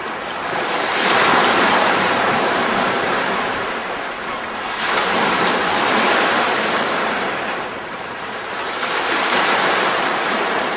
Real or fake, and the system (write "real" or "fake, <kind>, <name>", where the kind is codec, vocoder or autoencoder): fake, vocoder, BigVGAN v2